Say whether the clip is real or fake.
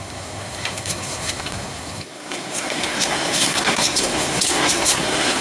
fake